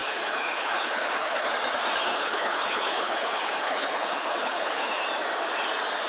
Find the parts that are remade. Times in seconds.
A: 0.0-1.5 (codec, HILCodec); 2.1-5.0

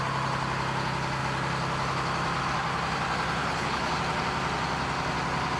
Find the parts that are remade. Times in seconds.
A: 3.4-4.0 (codec, HILCodec)